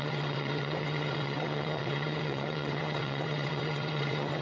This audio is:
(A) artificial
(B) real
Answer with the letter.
A